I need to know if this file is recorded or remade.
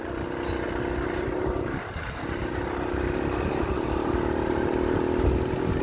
recorded